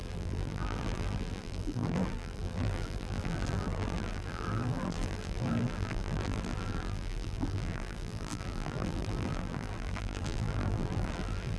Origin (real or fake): fake